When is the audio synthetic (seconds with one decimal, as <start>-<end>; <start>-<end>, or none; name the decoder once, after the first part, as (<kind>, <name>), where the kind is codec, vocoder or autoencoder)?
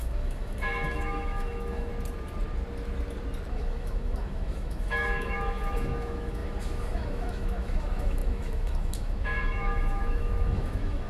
0.0-1.9 (autoencoder, DAC-VAE); 3.5-11.1